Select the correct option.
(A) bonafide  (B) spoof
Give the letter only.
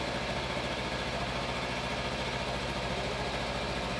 A